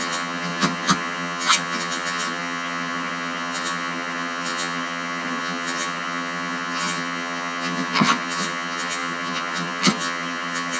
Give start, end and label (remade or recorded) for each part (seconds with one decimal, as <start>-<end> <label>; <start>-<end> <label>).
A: 0.0-10.8 remade